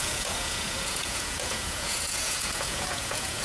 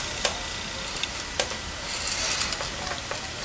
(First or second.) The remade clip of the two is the first